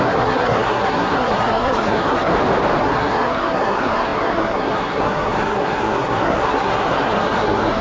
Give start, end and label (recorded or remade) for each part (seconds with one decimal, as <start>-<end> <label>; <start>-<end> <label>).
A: 0.0-2.3 remade; 2.3-2.8 recorded; 2.8-7.8 remade